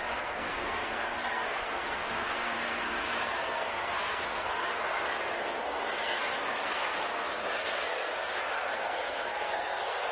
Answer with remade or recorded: remade